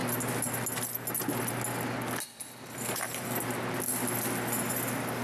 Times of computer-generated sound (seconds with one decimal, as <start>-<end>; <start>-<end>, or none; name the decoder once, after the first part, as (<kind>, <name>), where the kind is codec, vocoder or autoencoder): none